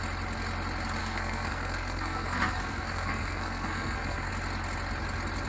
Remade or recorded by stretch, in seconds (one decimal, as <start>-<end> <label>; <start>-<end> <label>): 0.0-1.0 recorded; 1.0-4.3 remade; 4.3-5.5 recorded